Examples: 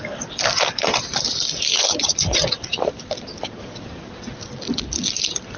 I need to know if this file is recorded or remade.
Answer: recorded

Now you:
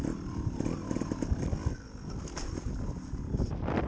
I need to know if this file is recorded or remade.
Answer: recorded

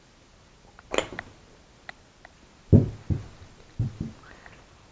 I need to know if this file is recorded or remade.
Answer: recorded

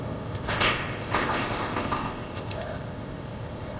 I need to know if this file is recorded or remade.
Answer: remade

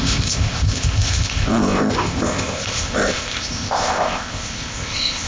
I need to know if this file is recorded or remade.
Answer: remade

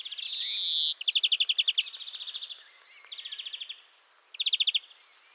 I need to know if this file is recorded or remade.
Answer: recorded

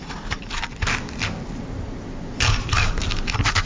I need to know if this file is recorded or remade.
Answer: recorded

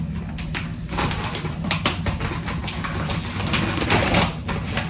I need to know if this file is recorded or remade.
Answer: recorded